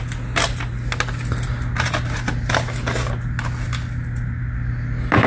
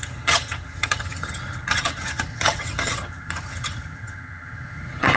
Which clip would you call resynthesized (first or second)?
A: second